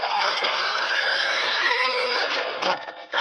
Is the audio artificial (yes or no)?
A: yes